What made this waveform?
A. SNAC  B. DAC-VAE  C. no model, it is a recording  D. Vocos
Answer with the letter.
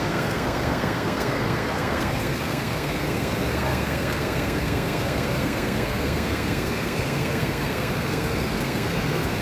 A